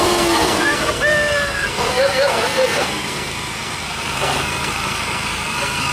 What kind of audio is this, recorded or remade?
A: remade